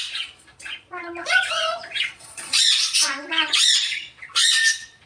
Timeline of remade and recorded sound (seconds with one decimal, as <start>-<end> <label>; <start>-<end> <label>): 0.0-5.1 remade